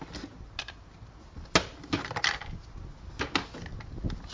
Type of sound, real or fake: real